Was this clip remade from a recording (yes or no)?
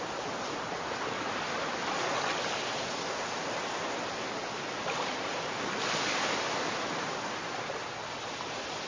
no